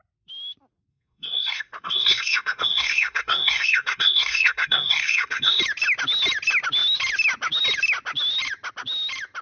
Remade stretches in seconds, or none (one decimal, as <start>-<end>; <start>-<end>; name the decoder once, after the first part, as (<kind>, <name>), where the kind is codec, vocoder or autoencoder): 0.9-5.6 (codec, SNAC)